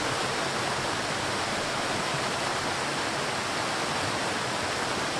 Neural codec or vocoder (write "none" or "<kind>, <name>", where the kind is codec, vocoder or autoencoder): none